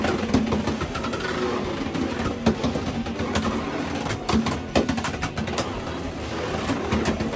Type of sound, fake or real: real